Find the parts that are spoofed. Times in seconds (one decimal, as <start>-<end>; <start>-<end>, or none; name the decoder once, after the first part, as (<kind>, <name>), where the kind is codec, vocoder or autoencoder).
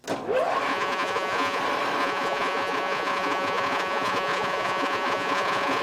0.7-1.6 (vocoder, Vocos); 2.0-5.8